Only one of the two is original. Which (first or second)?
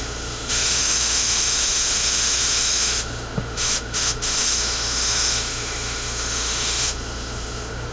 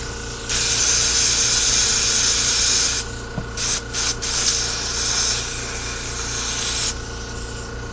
second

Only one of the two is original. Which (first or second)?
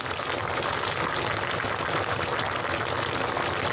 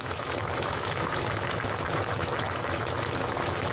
first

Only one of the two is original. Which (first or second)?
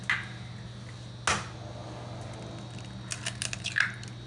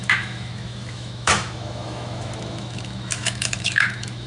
first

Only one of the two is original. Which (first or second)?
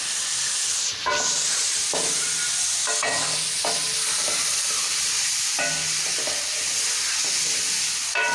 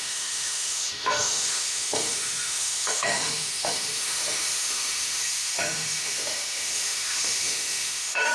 first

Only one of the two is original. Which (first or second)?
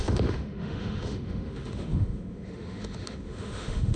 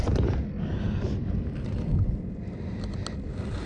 second